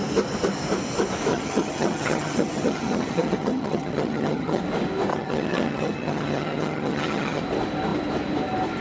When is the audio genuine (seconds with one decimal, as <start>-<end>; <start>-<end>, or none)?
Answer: 0.0-1.3; 4.6-5.1; 7.4-8.8